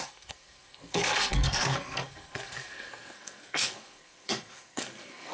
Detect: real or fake fake